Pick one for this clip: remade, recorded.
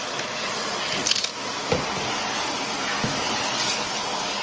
recorded